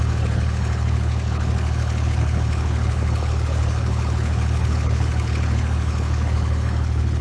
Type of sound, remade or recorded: remade